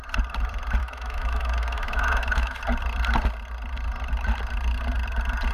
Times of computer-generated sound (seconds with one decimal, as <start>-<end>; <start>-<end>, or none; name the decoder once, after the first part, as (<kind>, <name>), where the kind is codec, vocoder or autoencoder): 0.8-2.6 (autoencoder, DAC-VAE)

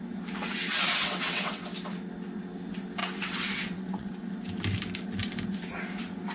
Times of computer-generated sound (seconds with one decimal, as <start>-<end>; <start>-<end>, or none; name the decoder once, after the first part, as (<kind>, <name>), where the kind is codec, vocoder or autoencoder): 0.9-1.6 (vocoder, WaveNeXt); 3.0-4.2

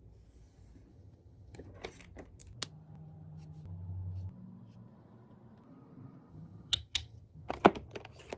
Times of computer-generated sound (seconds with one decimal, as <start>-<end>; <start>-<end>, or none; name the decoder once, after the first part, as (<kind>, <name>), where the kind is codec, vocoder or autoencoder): 0.9-1.7 (vocoder, HiFi-GAN); 6.3-7.5

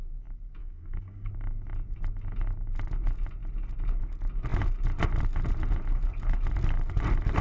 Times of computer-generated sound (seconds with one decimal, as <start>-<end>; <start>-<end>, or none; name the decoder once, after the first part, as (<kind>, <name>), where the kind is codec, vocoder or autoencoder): 0.6-1.3 (codec, SNAC)

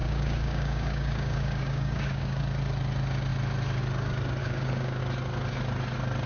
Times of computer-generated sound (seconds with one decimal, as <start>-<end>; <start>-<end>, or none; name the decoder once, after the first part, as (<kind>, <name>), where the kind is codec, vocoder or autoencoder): 0.0-2.4 (codec, DAC); 4.4-5.0

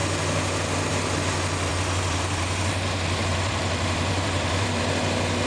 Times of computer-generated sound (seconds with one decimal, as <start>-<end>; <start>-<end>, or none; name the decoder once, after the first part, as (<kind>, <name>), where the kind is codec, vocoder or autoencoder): 1.7-5.0 (vocoder, BigVGAN v2)